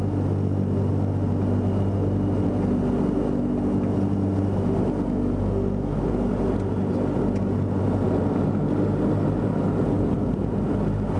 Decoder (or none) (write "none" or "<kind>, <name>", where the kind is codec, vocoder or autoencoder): none